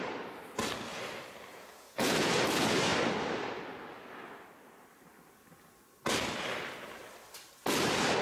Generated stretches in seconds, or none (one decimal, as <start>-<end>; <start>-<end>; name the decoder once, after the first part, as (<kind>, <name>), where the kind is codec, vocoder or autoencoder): 1.5-2.3 (vocoder, Vocos)